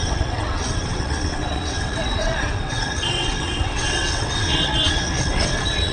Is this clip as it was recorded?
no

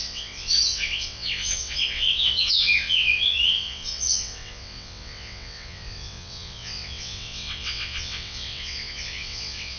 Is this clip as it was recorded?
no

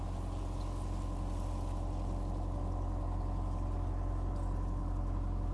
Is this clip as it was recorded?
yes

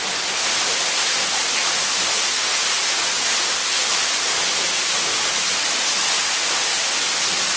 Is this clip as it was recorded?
yes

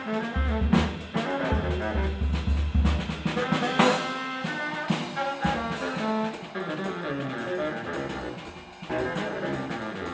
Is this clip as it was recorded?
yes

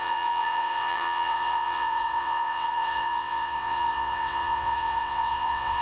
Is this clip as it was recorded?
no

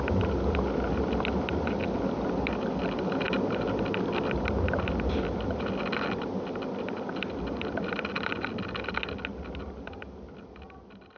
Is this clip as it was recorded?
yes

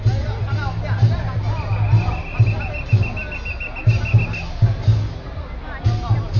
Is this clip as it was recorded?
yes